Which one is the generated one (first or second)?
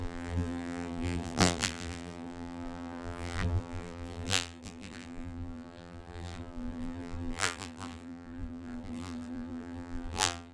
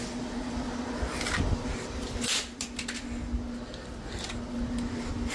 first